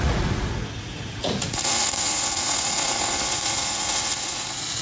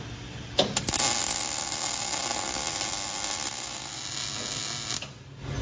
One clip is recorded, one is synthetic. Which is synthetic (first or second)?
first